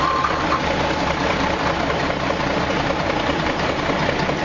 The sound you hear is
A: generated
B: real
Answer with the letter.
B